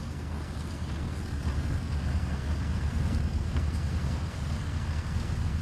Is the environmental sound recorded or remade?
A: remade